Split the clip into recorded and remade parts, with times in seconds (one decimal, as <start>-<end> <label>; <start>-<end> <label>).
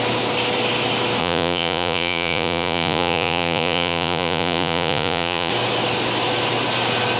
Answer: 0.0-1.2 recorded; 1.2-5.5 remade; 5.5-7.2 recorded